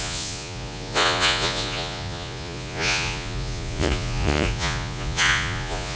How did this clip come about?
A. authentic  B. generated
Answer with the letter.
B